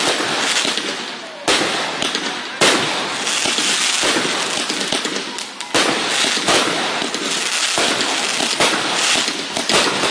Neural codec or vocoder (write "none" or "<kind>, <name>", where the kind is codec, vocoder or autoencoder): none